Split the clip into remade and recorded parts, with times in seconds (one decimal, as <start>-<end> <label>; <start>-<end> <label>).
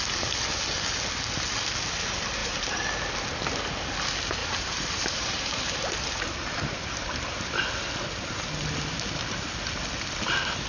0.0-2.4 recorded; 2.4-3.0 remade; 3.0-4.4 recorded; 4.4-7.6 remade; 7.6-10.7 recorded